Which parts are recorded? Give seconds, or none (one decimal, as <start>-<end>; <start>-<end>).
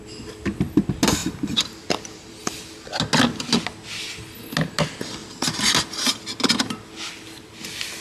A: 0.0-1.2; 2.4-8.0